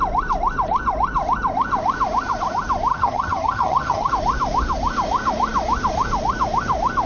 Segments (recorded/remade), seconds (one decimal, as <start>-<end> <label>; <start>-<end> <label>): 0.0-2.9 recorded; 2.9-4.1 remade; 4.1-7.1 recorded